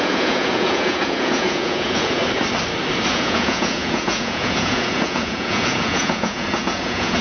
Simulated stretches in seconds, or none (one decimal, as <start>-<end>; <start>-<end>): 0.0-2.2; 3.1-7.2